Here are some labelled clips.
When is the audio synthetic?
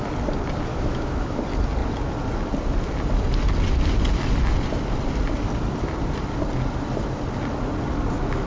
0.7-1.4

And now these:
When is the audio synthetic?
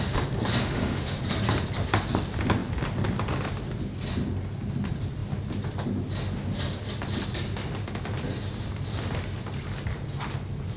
0.6-1.2